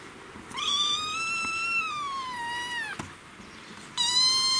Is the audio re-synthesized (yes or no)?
no